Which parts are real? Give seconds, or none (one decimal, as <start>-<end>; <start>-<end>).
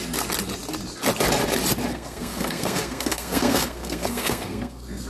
0.0-1.9